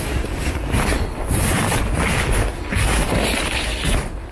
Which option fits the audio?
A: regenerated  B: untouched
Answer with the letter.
B